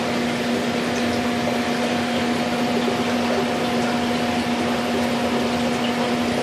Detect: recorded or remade recorded